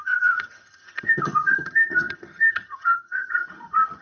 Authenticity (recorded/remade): remade